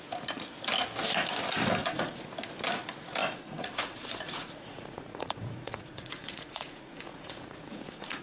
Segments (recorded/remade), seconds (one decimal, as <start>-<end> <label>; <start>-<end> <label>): 0.0-1.8 recorded; 1.8-2.3 remade; 2.3-3.2 recorded; 3.2-8.2 remade